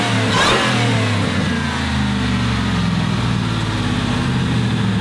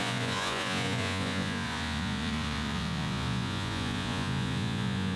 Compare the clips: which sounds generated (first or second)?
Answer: second